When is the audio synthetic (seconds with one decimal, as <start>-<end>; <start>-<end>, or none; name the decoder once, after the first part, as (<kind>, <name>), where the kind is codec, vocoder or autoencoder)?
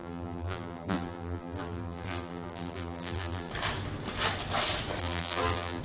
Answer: 0.0-3.5 (vocoder, BigVGAN v2); 5.0-5.8